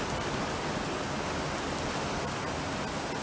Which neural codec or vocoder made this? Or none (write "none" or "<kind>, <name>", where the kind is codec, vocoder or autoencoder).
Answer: none